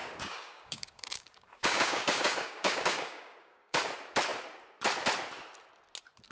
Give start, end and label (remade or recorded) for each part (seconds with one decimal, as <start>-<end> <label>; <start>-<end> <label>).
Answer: 0.0-3.8 remade; 3.8-6.3 recorded